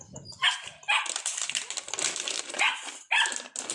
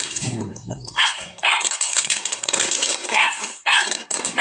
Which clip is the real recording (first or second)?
first